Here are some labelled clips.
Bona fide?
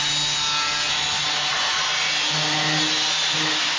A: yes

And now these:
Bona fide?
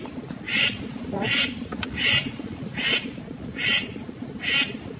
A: no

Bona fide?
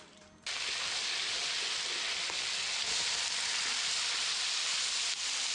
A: yes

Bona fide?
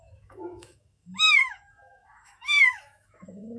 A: no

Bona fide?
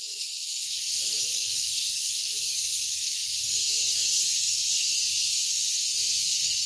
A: no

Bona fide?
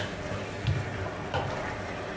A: yes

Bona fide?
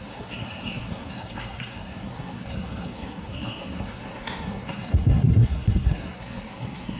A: no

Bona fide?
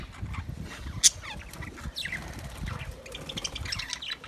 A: yes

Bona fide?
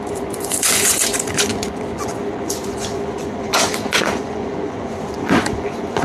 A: no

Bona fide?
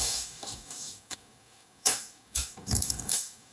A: no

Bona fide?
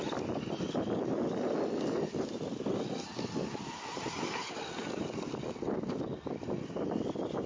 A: yes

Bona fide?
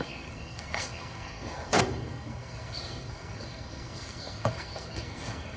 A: no